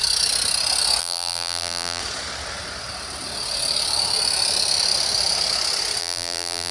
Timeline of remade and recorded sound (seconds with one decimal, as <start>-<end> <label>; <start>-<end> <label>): 0.0-1.0 recorded; 1.0-2.0 remade; 2.0-6.0 recorded; 6.0-6.7 remade